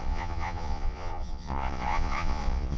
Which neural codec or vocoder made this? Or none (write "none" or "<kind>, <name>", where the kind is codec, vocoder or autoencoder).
vocoder, Vocos